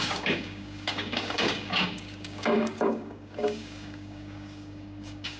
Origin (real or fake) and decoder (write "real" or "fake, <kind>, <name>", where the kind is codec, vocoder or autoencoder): fake, codec, DAC